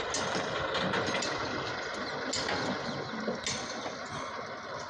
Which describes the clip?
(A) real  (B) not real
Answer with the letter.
A